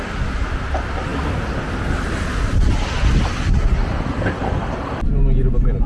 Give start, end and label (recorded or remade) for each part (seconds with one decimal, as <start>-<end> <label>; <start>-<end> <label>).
0.0-5.9 recorded